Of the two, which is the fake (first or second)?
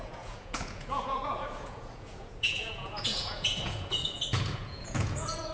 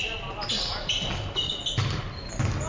first